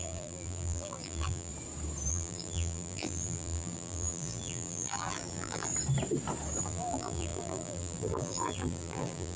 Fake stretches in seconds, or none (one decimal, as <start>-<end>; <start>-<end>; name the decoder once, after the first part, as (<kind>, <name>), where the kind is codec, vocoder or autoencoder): 0.0-1.5 (vocoder, BigVGAN v2); 2.1-5.7; 6.6-9.4